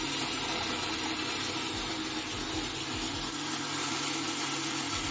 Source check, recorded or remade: recorded